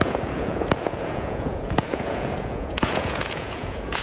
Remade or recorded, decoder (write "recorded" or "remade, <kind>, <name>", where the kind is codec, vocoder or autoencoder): remade, vocoder, Vocos